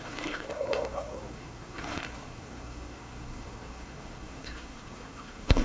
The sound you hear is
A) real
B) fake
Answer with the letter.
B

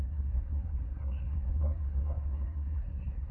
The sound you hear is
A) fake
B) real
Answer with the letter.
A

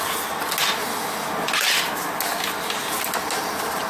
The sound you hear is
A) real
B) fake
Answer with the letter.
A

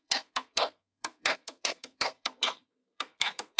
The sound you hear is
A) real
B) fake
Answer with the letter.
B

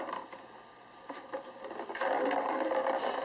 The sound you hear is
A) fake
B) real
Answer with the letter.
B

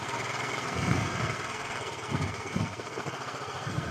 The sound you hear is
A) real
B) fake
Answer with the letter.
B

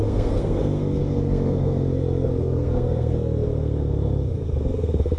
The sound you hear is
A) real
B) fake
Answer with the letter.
B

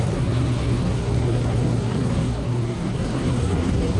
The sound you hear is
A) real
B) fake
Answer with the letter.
B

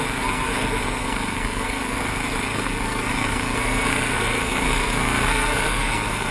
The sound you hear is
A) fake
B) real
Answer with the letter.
A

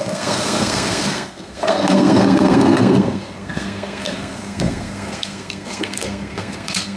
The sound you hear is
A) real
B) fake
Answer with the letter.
B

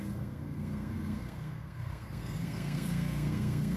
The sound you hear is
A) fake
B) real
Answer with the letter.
A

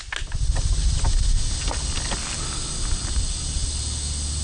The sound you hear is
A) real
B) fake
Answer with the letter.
A